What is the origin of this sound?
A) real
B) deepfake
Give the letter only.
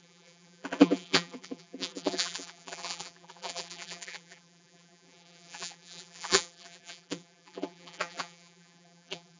B